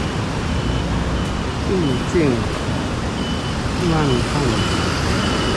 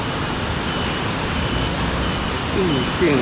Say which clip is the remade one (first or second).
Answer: second